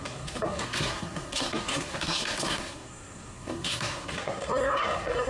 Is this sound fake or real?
fake